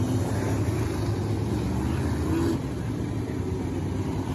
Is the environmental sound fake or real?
real